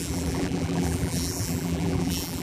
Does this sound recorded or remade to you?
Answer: remade